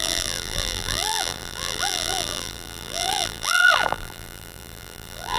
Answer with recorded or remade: remade